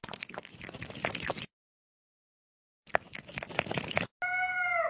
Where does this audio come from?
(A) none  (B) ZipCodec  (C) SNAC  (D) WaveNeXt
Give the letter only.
A